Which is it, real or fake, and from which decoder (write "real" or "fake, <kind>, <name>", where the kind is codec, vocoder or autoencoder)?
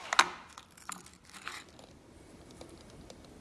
real